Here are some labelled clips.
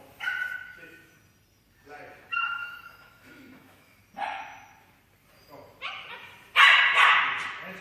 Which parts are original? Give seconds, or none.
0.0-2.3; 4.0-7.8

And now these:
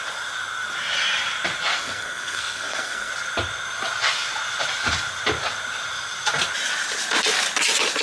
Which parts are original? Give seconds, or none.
0.0-1.7; 3.1-8.0

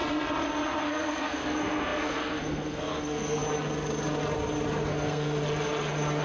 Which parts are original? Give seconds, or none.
0.0-0.8; 3.4-4.9; 5.4-6.2

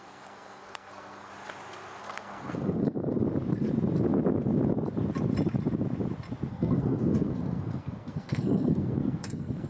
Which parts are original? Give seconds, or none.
1.3-2.0; 3.2-6.5

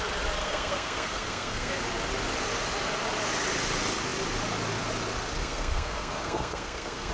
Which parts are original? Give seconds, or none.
0.0-0.4; 1.7-5.4

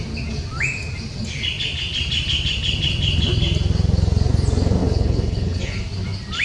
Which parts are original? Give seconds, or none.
0.0-4.8; 5.6-6.4